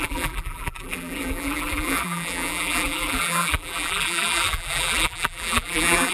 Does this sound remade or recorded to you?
remade